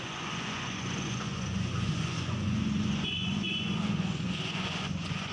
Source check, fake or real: fake